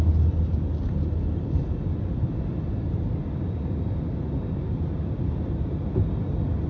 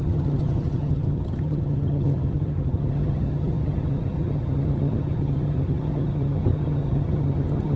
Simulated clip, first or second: second